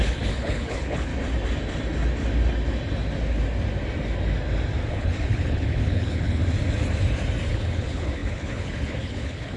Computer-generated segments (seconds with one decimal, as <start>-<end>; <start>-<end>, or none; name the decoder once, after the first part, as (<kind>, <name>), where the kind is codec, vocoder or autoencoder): 0.0-1.1 (codec, HILCodec); 4.9-6.4; 7.5-9.6